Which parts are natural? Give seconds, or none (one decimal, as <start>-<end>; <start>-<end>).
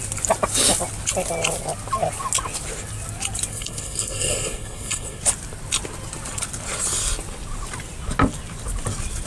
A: 0.0-3.5; 5.2-9.3